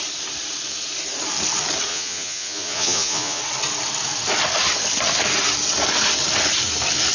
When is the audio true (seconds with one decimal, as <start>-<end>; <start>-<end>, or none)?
0.0-1.9; 3.4-7.1